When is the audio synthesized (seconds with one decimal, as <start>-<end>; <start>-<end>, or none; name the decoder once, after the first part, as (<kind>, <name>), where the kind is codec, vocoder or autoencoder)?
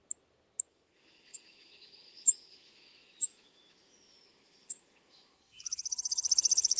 0.7-6.8 (autoencoder, DAC-VAE)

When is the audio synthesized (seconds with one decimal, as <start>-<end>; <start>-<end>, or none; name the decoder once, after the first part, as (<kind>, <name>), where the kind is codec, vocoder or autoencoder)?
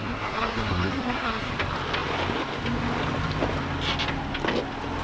0.0-1.5 (codec, SNAC)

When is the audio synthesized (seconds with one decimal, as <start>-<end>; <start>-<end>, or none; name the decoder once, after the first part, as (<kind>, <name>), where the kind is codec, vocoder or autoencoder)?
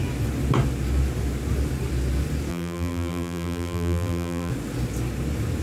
2.5-4.5 (vocoder, BigVGAN v2)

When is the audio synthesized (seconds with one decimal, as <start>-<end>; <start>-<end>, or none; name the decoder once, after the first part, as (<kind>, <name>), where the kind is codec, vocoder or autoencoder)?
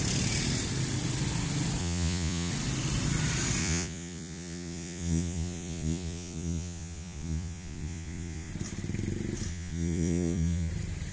1.8-2.5 (vocoder, Vocos); 3.6-8.5; 9.5-10.7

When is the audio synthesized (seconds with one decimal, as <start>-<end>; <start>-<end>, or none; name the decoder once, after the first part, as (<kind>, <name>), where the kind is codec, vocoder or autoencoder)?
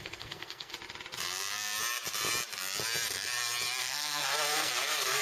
0.0-0.7 (codec, SNAC); 3.8-5.2